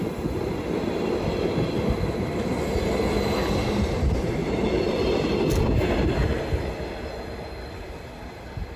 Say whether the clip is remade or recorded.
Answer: recorded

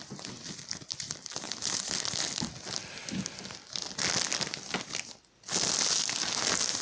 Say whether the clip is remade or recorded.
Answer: recorded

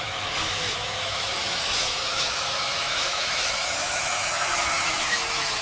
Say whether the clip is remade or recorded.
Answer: remade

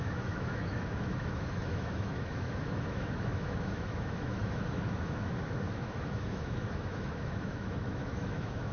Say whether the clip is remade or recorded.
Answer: remade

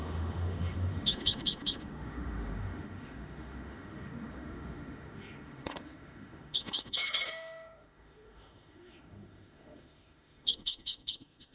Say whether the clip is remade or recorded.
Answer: remade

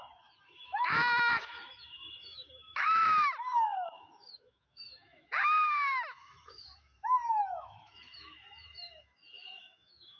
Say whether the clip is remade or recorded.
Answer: remade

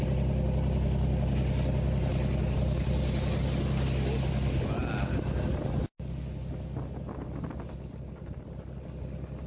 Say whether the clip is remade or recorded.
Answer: recorded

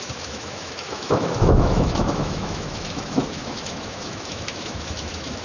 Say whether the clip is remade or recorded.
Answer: remade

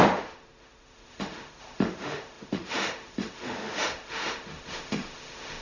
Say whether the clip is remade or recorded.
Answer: remade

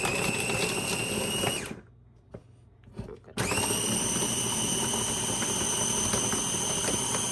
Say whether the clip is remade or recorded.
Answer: recorded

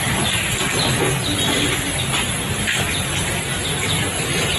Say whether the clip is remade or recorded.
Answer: recorded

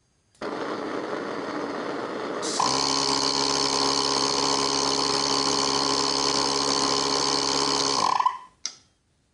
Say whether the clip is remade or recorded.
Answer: recorded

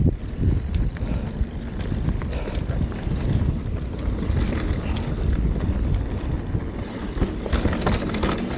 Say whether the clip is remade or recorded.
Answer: recorded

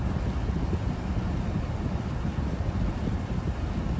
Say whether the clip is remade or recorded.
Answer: recorded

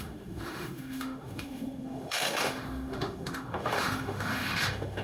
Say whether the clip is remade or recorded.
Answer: remade